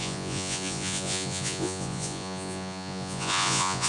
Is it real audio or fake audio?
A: fake